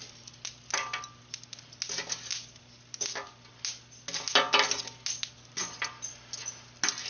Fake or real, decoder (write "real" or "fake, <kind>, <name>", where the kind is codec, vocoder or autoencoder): real